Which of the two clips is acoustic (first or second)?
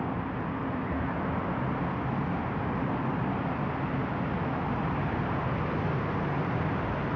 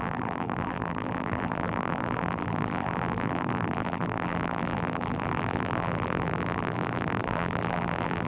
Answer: first